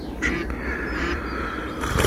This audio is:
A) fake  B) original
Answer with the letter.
A